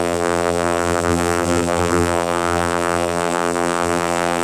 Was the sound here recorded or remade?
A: remade